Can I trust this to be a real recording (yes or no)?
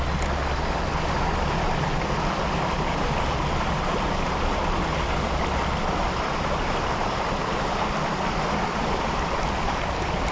yes